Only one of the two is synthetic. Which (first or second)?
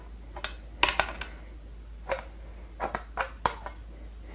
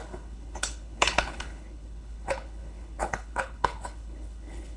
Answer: second